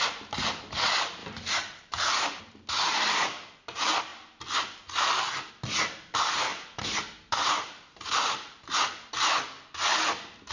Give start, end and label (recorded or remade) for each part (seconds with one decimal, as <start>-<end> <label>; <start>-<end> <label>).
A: 0.0-1.2 recorded; 1.2-2.4 remade; 2.4-6.5 recorded; 6.5-9.1 remade; 9.1-10.5 recorded